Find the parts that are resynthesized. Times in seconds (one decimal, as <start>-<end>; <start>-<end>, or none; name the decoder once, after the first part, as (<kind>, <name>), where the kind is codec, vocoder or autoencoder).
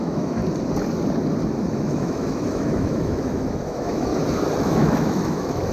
0.0-0.4 (autoencoder, DAC-VAE); 1.5-4.1; 4.6-5.7